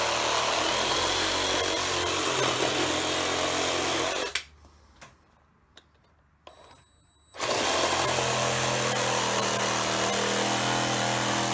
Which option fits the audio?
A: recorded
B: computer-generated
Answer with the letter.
A